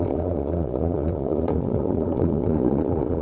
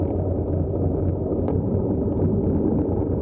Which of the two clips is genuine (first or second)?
second